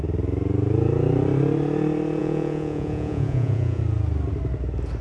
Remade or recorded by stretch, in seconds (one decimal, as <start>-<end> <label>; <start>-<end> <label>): 0.0-2.2 recorded; 2.2-3.8 remade; 3.8-5.0 recorded